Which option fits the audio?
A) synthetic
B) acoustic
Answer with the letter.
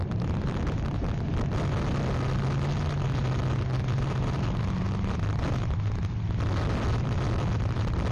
B